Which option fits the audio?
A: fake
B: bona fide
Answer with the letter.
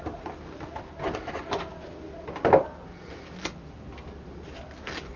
B